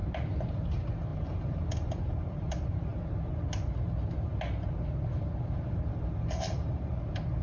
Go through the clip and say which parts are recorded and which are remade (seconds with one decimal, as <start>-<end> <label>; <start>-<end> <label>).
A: 0.0-0.5 recorded; 0.5-2.9 remade; 2.9-5.7 recorded; 5.7-7.4 remade